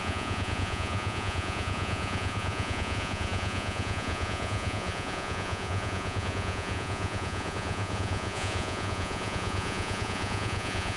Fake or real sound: fake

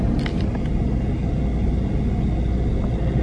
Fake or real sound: real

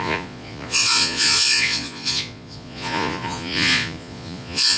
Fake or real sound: fake